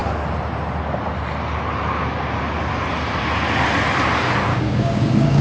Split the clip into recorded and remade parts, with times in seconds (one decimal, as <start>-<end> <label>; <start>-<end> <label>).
0.0-4.5 recorded; 4.5-5.4 remade